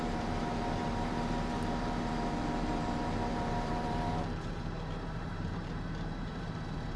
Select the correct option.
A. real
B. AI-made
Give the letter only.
B